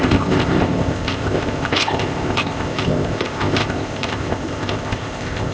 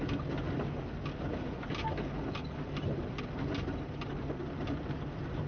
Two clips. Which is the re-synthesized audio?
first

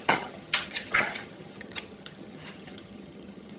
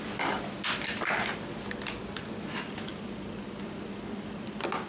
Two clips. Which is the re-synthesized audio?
first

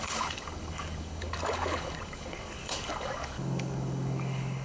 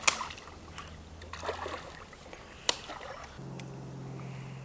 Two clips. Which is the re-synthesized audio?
first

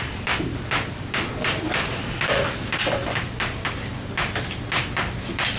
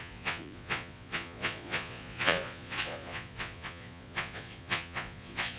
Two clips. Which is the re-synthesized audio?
second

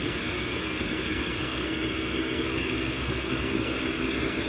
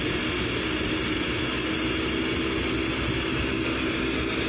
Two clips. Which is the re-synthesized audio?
first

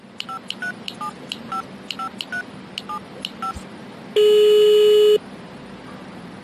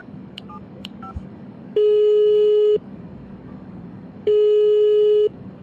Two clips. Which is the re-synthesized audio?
second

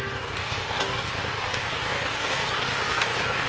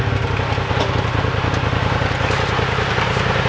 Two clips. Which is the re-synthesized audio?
first